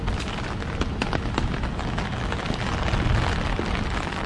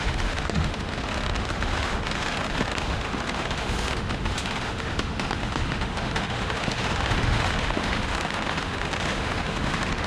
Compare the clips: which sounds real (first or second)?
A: first